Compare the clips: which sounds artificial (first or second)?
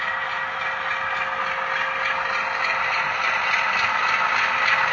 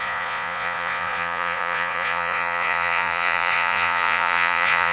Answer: second